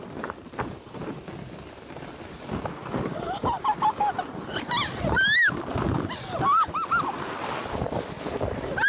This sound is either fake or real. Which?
real